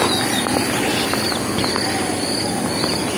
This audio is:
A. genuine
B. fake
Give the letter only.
A